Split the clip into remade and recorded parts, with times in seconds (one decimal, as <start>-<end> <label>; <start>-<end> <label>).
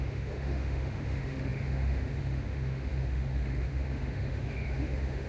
0.0-5.3 remade